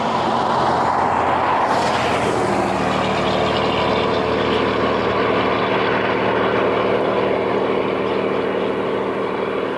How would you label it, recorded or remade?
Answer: recorded